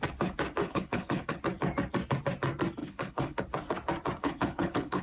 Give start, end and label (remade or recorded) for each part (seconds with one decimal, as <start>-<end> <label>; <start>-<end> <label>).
0.0-0.6 recorded; 0.6-1.4 remade; 1.4-2.8 recorded; 2.8-3.4 remade; 3.4-4.2 recorded; 4.2-5.0 remade